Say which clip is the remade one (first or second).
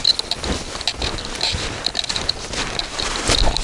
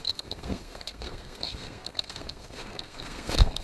second